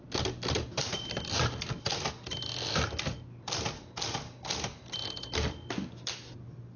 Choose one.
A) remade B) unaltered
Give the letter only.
B